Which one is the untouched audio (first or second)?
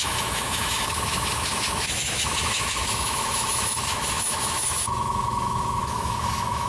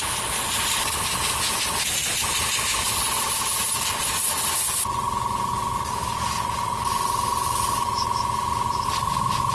second